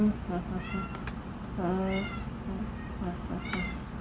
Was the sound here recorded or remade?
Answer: recorded